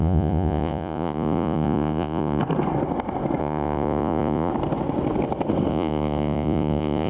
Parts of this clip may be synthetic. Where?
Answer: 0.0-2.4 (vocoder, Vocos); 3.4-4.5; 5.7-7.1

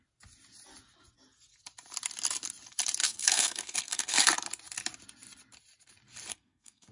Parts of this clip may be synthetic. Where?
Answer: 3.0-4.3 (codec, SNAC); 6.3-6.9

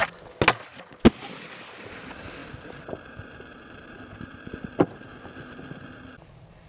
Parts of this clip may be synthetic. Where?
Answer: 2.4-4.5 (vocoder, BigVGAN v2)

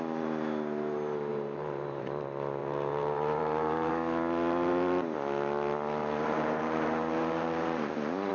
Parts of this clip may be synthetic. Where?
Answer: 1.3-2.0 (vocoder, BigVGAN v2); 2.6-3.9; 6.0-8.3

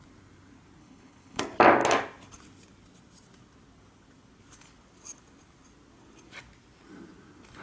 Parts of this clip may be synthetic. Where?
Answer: 0.8-1.4 (codec, HILCodec)